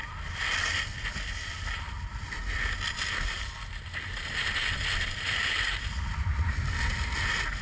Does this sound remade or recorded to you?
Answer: recorded